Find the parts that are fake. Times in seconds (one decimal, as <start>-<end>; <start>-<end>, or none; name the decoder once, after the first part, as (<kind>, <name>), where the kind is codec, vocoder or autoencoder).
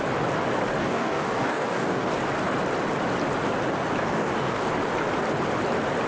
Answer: 0.8-2.1 (codec, DAC); 4.0-4.7